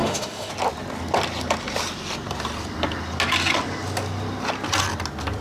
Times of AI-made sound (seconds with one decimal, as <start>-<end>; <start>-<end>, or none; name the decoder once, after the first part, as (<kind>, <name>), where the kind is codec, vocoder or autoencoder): 0.0-0.5 (autoencoder, DAC-VAE)